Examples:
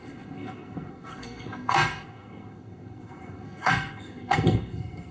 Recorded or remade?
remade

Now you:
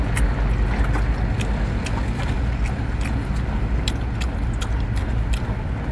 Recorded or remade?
recorded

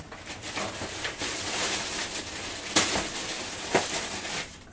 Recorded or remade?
recorded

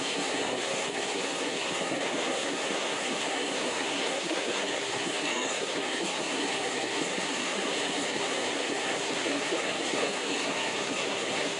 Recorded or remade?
remade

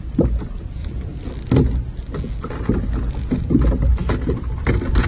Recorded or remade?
recorded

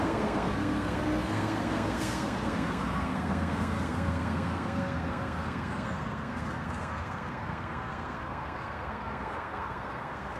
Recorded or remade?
remade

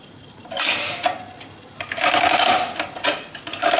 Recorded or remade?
recorded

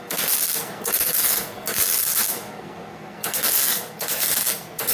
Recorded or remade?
remade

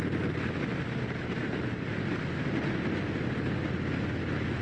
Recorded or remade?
recorded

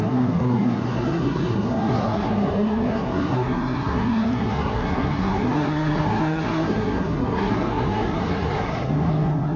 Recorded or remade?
remade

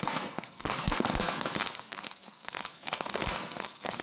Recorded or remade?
remade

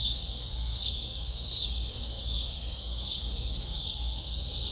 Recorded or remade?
remade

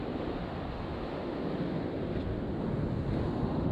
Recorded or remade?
recorded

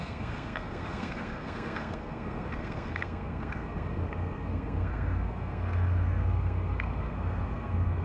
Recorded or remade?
remade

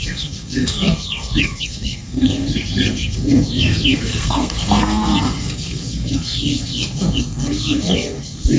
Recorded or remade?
remade